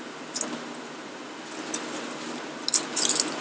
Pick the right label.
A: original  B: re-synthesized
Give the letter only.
A